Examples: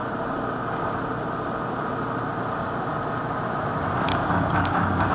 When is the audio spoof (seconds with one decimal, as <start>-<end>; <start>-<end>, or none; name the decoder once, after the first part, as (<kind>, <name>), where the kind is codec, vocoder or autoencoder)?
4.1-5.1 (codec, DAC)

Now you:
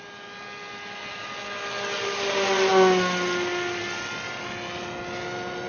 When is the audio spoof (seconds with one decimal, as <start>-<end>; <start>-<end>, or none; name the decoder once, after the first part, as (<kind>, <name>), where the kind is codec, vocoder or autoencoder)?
none

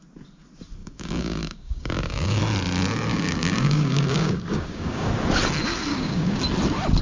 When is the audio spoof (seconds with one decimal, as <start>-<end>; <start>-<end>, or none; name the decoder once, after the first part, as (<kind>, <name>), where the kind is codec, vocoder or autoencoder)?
0.8-2.4 (codec, DAC); 3.1-5.1; 5.9-6.4

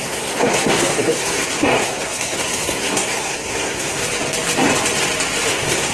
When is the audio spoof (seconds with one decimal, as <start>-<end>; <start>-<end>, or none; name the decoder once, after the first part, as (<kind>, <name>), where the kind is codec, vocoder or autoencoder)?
0.0-4.0 (codec, SNAC); 5.5-5.9

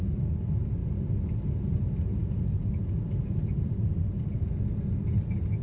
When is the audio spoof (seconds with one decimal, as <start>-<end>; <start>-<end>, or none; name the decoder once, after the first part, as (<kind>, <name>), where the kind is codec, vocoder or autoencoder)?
none

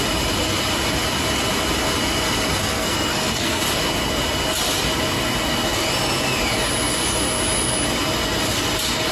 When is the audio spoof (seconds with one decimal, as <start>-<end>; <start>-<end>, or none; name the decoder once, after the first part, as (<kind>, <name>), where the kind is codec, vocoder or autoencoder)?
2.6-3.6 (codec, SNAC)

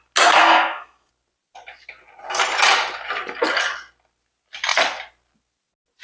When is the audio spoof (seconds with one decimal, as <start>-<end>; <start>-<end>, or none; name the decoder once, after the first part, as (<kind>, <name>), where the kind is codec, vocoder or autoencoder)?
0.4-1.1 (codec, SNAC)